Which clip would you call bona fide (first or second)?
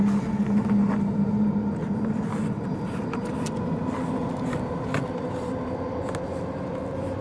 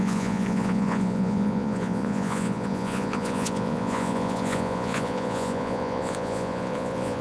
first